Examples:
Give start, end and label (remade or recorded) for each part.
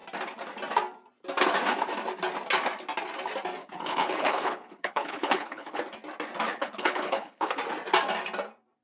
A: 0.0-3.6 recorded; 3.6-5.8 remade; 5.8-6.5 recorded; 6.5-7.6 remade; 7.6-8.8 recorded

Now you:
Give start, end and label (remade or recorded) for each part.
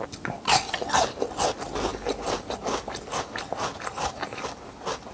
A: 0.0-5.1 recorded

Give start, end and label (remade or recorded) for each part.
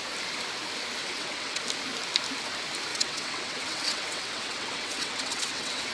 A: 0.0-1.0 recorded; 1.0-1.6 remade; 1.6-2.9 recorded; 2.9-5.9 remade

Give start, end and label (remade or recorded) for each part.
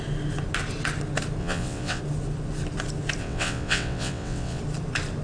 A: 0.0-1.4 recorded; 1.4-2.0 remade; 2.0-3.2 recorded; 3.2-4.6 remade; 4.6-5.2 recorded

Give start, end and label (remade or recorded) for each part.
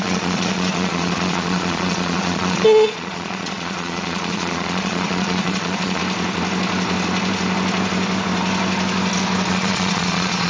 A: 0.0-6.0 remade; 6.0-9.5 recorded; 9.5-10.5 remade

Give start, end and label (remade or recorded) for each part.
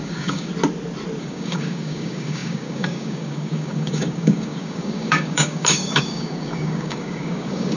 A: 0.0-0.5 remade; 0.5-1.2 recorded; 1.2-7.8 remade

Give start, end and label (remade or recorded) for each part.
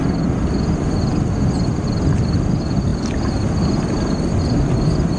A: 0.0-5.2 recorded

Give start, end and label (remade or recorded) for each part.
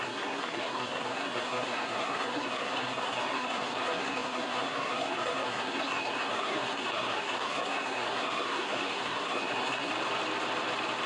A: 0.0-9.9 remade; 9.9-11.1 recorded